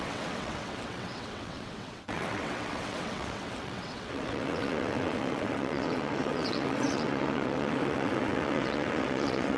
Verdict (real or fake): fake